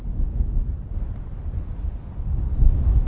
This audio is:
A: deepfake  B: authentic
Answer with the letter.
B